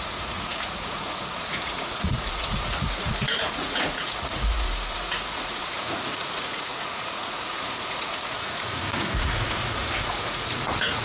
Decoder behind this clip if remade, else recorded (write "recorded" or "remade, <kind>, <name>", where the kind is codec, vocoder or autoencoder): remade, vocoder, Vocos